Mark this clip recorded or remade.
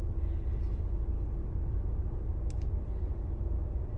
recorded